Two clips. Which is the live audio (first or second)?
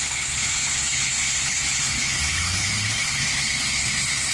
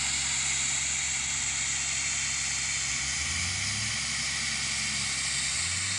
second